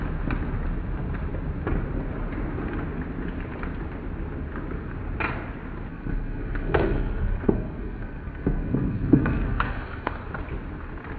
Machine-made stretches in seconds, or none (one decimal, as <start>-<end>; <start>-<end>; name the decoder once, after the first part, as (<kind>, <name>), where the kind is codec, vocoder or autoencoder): 5.9-10.2 (codec, SNAC)